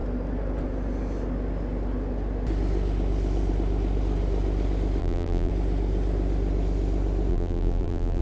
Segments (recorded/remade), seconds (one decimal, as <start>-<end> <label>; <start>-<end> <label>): 0.0-5.0 recorded; 5.0-5.5 remade; 5.5-7.3 recorded; 7.3-8.2 remade